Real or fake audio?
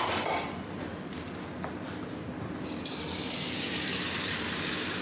real